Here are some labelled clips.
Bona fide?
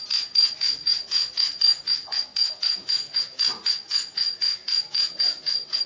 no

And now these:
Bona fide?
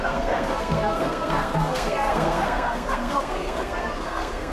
no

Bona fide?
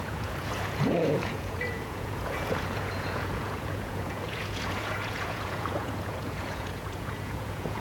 no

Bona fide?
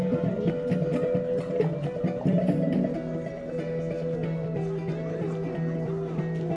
yes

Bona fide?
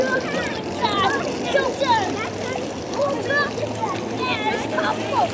yes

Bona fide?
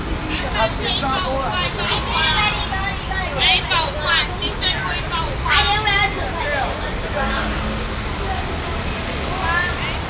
yes